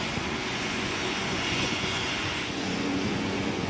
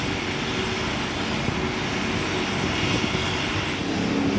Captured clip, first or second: second